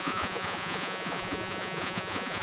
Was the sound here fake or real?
fake